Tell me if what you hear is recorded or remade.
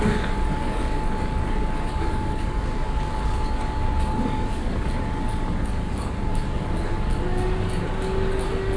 remade